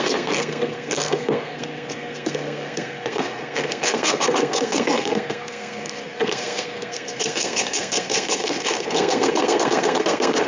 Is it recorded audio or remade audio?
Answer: remade